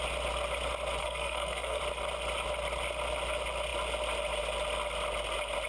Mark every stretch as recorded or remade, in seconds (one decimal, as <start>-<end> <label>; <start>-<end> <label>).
0.0-1.0 recorded; 1.0-1.8 remade; 1.8-5.7 recorded